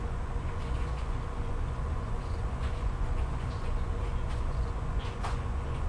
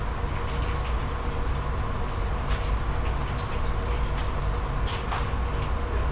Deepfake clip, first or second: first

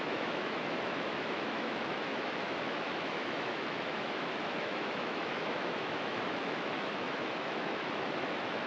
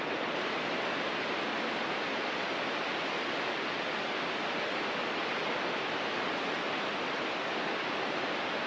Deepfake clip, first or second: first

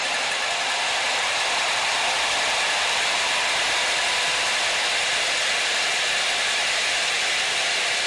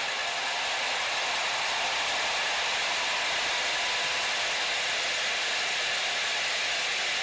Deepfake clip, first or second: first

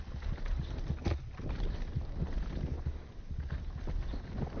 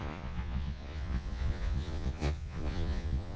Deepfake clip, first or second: second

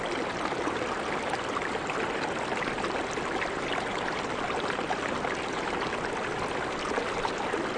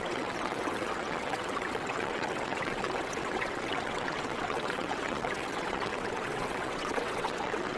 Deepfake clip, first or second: second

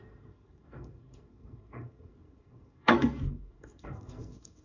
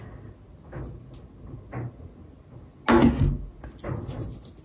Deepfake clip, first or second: first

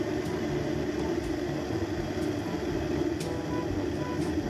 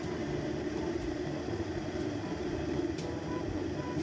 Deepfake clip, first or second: second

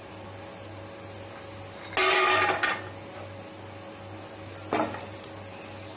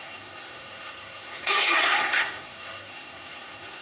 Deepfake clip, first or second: second